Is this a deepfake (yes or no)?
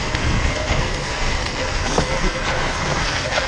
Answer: yes